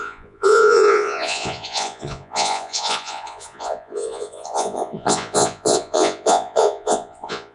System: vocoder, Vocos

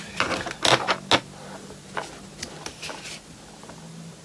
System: none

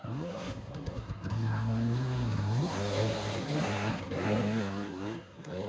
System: codec, SNAC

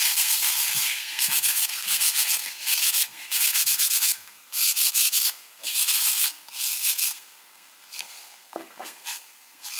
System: codec, SNAC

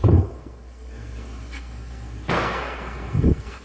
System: codec, SNAC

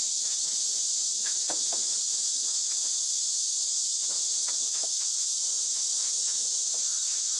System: autoencoder, DAC-VAE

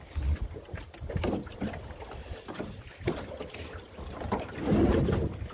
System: none